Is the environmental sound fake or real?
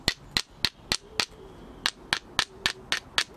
real